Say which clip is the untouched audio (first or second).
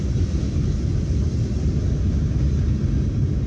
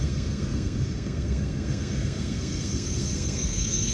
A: first